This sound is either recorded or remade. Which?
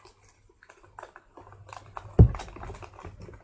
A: recorded